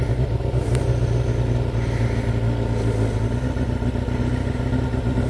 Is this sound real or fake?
real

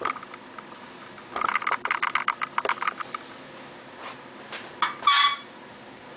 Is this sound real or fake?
real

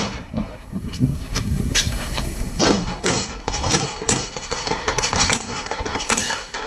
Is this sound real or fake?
fake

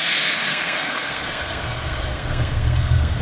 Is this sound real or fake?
fake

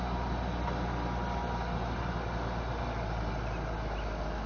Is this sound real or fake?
real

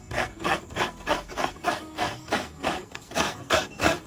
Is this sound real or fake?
fake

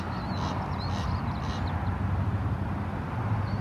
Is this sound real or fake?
real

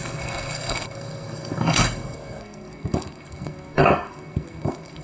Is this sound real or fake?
fake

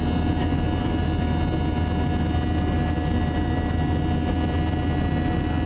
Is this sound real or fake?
real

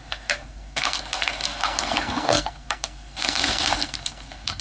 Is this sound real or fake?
fake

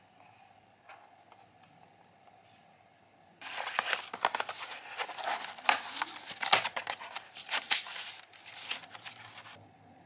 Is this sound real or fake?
real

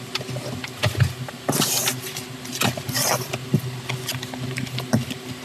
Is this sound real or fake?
real